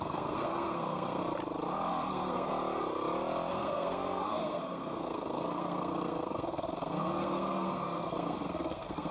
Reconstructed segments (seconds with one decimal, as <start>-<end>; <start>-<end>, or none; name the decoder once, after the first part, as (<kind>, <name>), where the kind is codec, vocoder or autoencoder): 0.0-1.2 (codec, SNAC); 2.1-2.5; 3.5-9.1